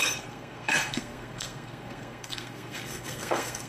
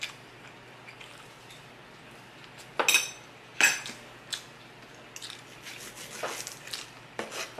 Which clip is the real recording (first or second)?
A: second